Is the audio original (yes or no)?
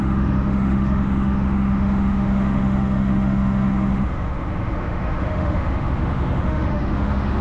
no